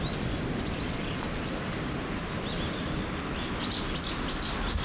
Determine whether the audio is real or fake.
real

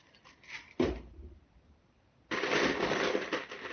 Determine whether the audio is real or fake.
real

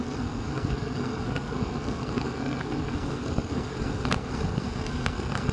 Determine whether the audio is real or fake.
fake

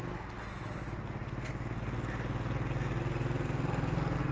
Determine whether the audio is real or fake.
real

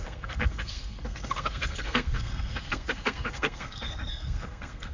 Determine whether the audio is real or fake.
fake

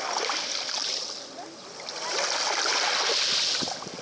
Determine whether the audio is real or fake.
real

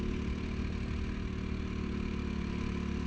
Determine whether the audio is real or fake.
real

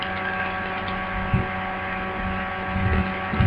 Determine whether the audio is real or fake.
real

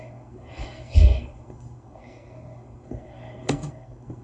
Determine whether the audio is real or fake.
fake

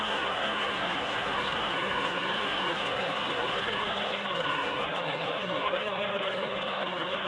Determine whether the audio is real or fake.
fake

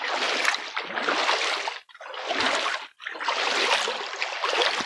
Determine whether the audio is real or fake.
real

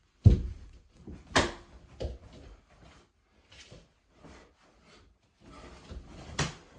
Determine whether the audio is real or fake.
real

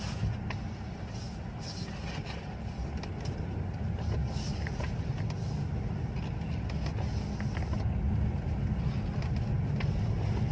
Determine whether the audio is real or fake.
real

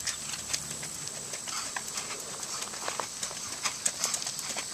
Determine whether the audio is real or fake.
real